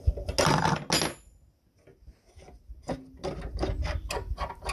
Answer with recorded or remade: recorded